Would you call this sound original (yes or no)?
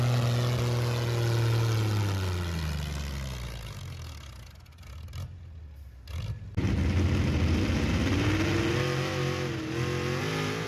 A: yes